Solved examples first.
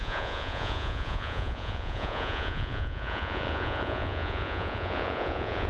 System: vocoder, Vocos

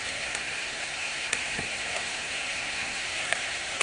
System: codec, SNAC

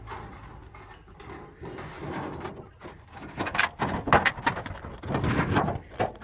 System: none